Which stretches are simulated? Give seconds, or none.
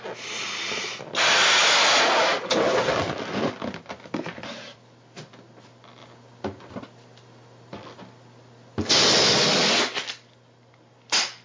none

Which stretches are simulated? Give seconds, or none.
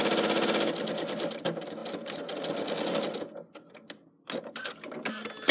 none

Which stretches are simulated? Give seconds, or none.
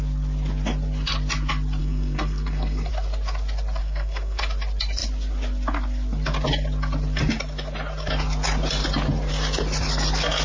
1.8-2.9 (codec, SNAC); 3.8-4.4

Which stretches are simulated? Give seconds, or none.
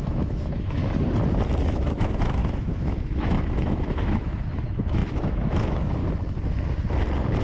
0.0-0.8 (autoencoder, DAC-VAE); 1.6-6.0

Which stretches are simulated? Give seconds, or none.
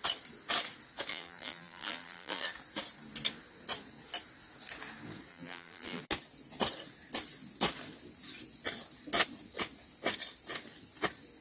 1.1-2.5 (vocoder, BigVGAN v2); 5.3-6.0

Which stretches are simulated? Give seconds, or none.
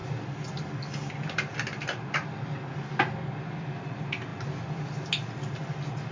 none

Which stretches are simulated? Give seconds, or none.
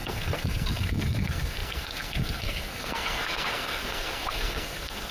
0.0-5.1 (codec, SNAC)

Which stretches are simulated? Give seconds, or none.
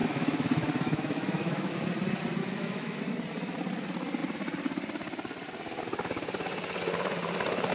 0.0-1.9 (autoencoder, DAC-VAE); 2.4-3.0